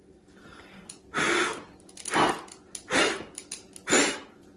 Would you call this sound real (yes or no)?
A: yes